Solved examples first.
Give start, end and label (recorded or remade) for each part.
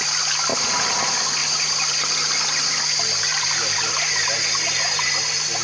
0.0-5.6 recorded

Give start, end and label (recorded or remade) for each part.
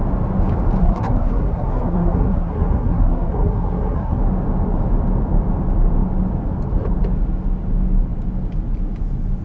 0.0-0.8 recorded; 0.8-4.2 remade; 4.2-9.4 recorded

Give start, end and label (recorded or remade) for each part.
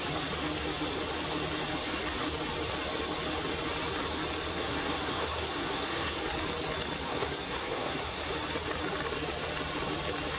0.0-4.5 recorded; 4.5-6.2 remade; 6.2-7.1 recorded; 7.1-8.3 remade; 8.3-10.4 recorded